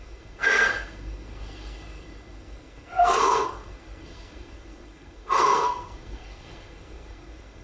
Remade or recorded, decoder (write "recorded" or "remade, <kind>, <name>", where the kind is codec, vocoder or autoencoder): remade, codec, SNAC